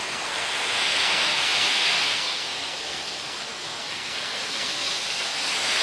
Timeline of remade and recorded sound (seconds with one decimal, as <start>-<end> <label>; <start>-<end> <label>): 0.0-5.8 remade